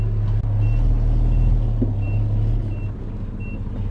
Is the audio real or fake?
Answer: real